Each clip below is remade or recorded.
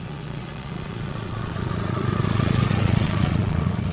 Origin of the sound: remade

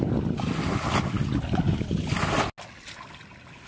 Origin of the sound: recorded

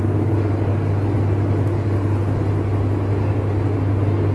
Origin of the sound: recorded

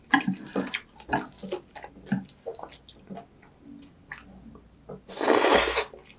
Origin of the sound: recorded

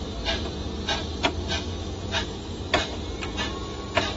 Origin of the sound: recorded